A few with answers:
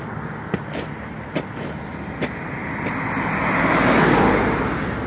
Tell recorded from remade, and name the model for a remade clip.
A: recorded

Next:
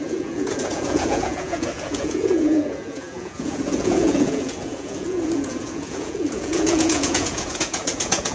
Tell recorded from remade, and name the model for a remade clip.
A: remade, vocoder, Vocos